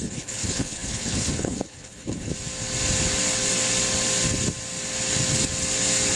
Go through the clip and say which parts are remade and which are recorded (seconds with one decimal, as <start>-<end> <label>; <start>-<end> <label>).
0.0-2.3 remade; 2.3-6.2 recorded